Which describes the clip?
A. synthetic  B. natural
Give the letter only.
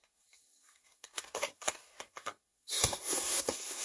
A